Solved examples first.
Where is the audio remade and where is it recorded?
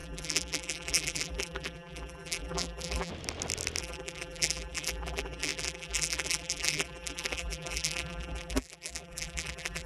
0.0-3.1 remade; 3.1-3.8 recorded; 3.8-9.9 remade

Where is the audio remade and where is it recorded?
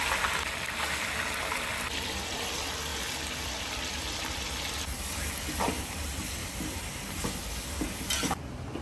0.0-6.4 recorded; 6.4-7.1 remade; 7.1-8.8 recorded